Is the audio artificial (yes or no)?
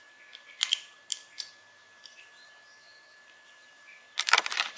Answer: yes